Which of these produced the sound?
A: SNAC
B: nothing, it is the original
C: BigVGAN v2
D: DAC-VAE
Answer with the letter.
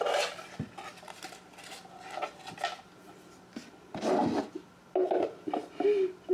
B